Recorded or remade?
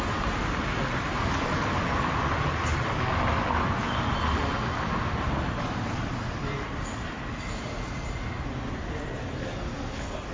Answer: recorded